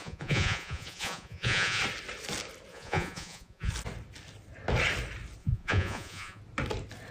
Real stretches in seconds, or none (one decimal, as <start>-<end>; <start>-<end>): 1.8-2.7; 3.7-5.4; 6.4-7.1